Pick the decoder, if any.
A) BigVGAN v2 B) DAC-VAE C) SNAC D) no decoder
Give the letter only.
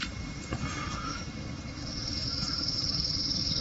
B